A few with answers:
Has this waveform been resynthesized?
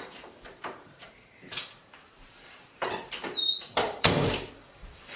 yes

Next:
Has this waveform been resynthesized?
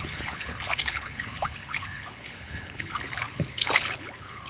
yes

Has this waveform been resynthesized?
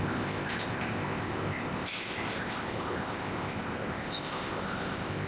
yes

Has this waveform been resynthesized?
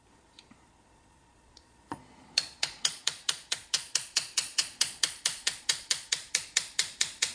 yes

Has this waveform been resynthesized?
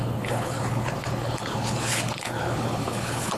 yes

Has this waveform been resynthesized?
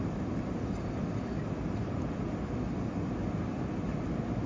no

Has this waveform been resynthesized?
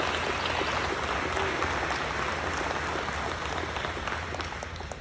no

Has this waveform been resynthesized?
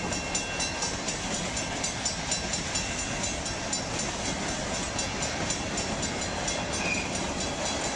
no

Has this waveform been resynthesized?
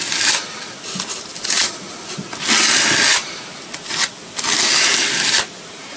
no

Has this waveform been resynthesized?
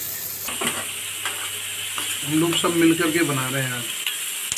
no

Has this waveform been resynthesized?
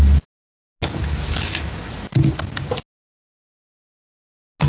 no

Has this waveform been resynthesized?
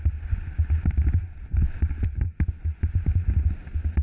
no